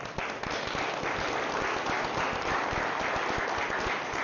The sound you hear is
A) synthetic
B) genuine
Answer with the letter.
B